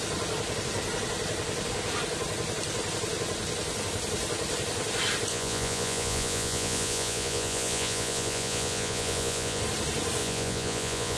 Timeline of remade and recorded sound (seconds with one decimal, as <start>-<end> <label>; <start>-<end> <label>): 0.0-5.3 recorded; 5.3-9.6 remade; 9.6-10.2 recorded; 10.2-11.2 remade